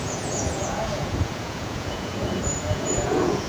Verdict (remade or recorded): remade